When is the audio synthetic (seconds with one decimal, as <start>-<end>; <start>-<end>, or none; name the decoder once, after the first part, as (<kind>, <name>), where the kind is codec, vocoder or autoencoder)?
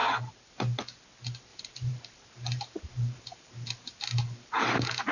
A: 0.0-0.5 (vocoder, BigVGAN v2); 1.5-4.6